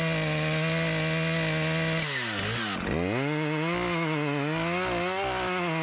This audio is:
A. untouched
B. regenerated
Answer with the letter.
A